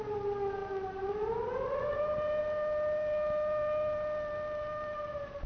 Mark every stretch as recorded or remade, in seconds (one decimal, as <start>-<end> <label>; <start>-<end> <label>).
0.0-5.5 recorded